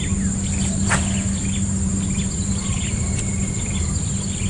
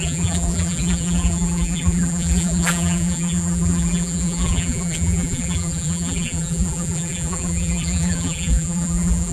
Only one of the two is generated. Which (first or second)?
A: second